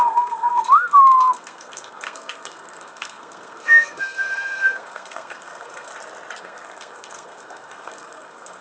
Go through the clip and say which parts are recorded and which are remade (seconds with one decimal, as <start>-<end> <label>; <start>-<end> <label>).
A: 0.0-5.9 remade; 5.9-6.4 recorded; 6.4-8.6 remade